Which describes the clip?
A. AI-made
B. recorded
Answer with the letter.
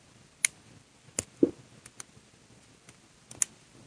B